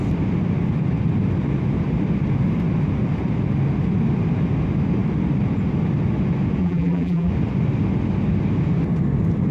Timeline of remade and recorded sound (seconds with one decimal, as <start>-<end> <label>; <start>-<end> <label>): 0.0-6.6 recorded; 6.6-7.3 remade; 7.3-9.5 recorded